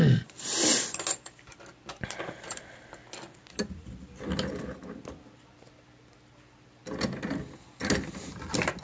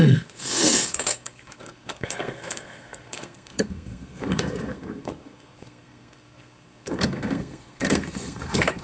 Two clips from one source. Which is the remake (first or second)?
second